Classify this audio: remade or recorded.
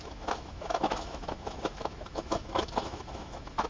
remade